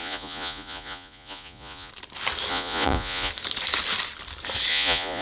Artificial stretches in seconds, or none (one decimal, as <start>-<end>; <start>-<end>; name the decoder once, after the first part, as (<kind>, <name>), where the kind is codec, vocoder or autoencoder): 0.0-1.9 (vocoder, Vocos); 2.5-3.3; 4.7-5.2